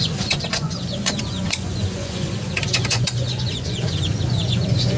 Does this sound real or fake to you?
fake